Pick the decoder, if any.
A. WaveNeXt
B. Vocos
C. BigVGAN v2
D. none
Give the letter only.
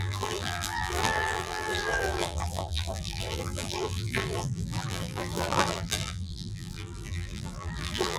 C